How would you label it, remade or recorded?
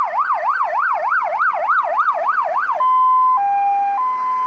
recorded